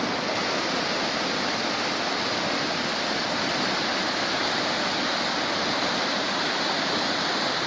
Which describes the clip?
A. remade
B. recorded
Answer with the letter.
B